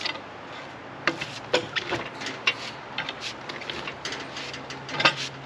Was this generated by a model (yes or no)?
no